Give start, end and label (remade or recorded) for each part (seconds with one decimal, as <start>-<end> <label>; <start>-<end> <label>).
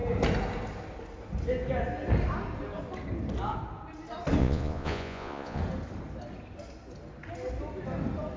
0.0-4.4 recorded; 4.4-5.6 remade; 5.6-8.4 recorded